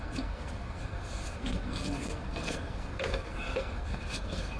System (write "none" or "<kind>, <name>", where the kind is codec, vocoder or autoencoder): codec, SNAC